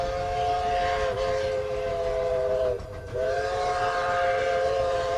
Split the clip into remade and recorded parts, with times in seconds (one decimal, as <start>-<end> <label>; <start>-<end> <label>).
0.0-1.9 recorded; 1.9-5.2 remade